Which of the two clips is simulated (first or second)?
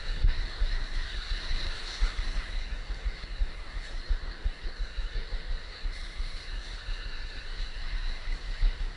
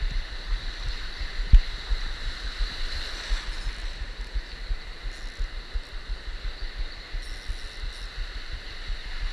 first